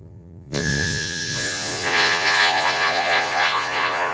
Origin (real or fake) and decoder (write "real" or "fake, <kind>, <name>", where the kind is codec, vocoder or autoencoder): fake, vocoder, Vocos